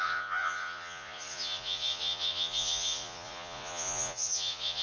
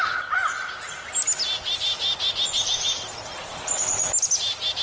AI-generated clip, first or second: first